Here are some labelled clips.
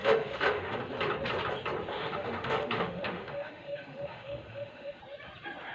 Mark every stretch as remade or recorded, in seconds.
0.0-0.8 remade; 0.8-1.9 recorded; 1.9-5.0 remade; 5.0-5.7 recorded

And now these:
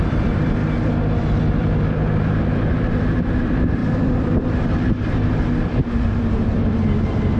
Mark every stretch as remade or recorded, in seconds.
0.0-0.6 remade; 0.6-1.2 recorded; 1.2-7.4 remade

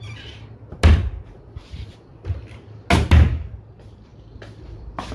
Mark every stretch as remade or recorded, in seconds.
0.0-2.1 recorded; 2.1-2.6 remade; 2.6-5.1 recorded

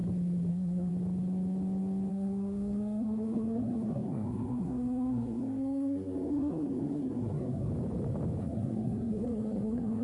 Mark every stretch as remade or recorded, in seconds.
0.0-0.5 recorded; 0.5-0.9 remade; 0.9-2.1 recorded; 2.1-7.7 remade; 7.7-8.4 recorded; 8.4-10.0 remade

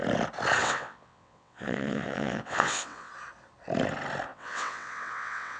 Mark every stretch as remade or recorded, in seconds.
0.0-0.6 recorded; 0.6-3.1 remade; 3.1-4.3 recorded; 4.3-5.6 remade

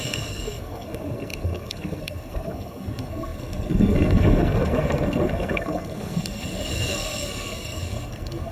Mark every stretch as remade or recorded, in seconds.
0.0-8.5 remade